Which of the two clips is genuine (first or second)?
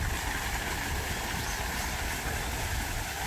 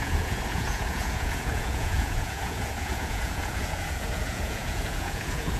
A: first